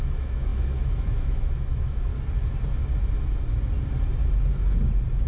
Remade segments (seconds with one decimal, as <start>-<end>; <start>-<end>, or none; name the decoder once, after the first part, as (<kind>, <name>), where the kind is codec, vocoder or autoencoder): 0.0-2.1 (autoencoder, DAC-VAE)